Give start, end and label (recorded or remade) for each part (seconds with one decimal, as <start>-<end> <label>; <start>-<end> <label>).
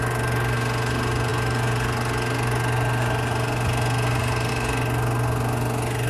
0.0-6.1 recorded